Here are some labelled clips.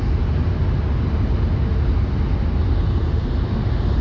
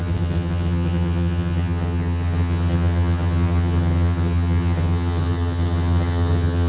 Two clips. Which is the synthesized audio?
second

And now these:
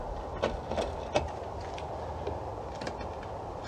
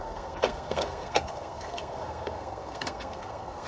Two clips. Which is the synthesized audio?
second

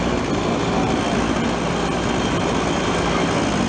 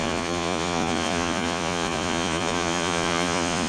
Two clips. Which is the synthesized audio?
second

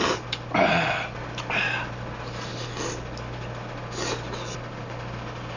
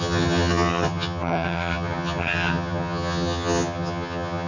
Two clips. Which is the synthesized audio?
second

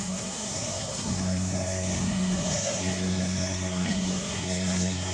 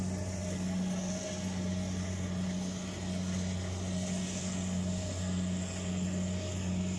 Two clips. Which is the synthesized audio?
first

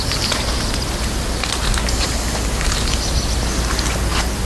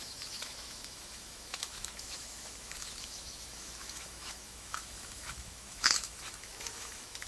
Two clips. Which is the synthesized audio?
second